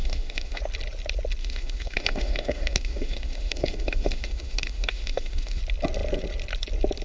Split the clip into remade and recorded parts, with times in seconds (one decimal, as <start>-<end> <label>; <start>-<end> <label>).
0.0-0.6 remade; 0.6-1.4 recorded; 1.4-5.6 remade; 5.6-7.0 recorded